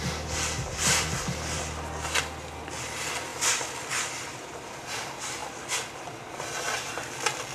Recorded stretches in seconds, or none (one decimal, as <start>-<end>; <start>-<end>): 0.0-7.5